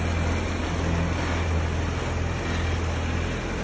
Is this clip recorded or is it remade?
recorded